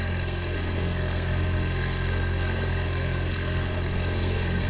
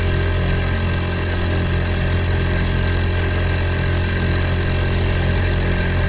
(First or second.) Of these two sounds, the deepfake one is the first